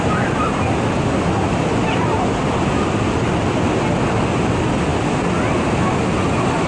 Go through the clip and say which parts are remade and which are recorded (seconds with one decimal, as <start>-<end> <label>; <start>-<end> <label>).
0.0-6.7 recorded